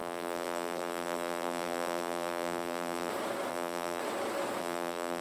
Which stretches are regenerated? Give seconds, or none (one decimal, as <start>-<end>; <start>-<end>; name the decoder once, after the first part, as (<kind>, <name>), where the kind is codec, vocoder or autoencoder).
0.0-3.1 (vocoder, BigVGAN v2); 3.5-4.0; 4.6-5.2